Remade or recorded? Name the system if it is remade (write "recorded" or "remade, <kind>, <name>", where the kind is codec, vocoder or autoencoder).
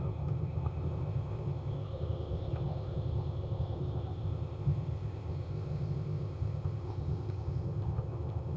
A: remade, codec, ZipCodec